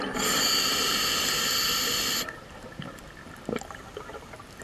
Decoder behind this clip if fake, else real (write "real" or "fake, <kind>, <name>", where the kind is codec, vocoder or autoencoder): real